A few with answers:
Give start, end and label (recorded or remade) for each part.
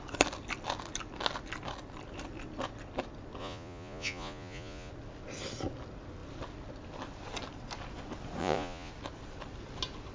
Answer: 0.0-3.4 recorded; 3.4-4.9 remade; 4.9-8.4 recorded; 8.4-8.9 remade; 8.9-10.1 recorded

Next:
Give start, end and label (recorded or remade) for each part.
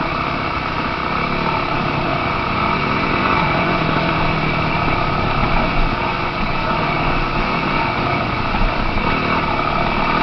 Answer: 0.0-2.1 recorded; 2.1-3.8 remade; 3.8-5.4 recorded; 5.4-8.8 remade; 8.8-10.2 recorded